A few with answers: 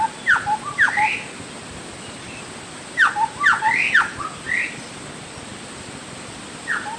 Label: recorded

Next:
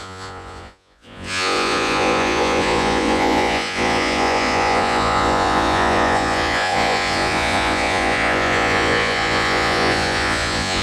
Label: remade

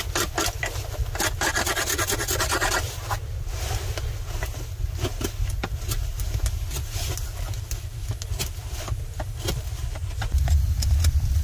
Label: recorded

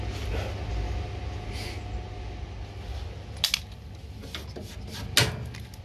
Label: recorded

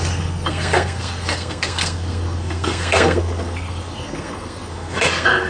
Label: remade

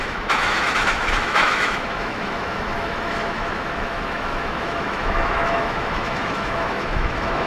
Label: remade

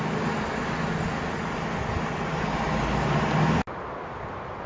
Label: recorded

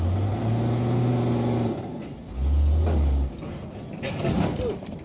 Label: recorded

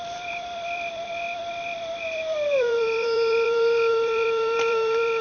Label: remade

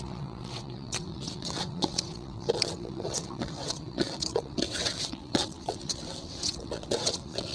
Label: remade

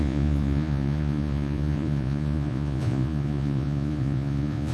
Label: remade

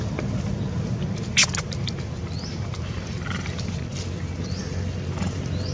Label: recorded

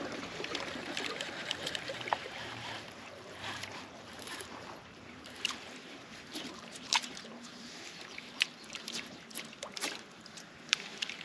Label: remade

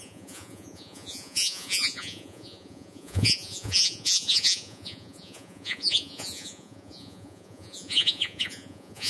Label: remade